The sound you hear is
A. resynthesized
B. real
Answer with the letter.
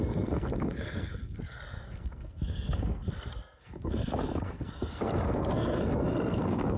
A